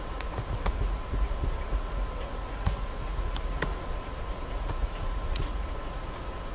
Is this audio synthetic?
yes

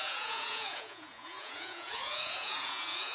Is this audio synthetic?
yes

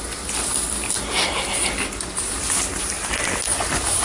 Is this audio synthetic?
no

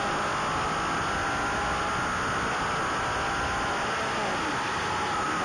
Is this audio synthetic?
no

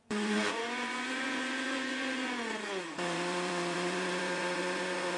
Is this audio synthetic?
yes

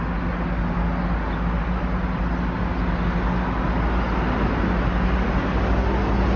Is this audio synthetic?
no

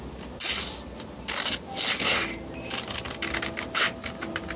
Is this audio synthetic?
no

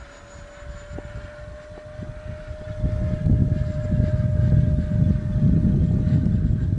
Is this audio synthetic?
no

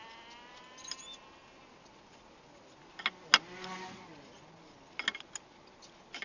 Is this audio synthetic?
no